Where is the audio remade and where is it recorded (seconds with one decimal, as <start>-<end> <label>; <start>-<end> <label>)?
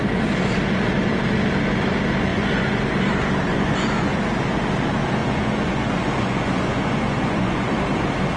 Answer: 0.0-2.3 recorded; 2.3-2.9 remade; 2.9-3.5 recorded; 3.5-4.2 remade; 4.2-5.2 recorded; 5.2-7.8 remade; 7.8-8.4 recorded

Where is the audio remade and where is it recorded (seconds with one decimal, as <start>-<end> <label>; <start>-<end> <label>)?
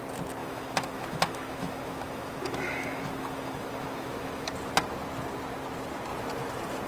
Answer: 0.0-0.4 recorded; 0.4-4.5 remade; 4.5-6.9 recorded